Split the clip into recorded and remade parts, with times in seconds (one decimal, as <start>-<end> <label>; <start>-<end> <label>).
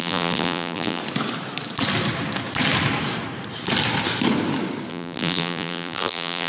0.0-1.0 remade; 1.0-4.9 recorded; 4.9-6.5 remade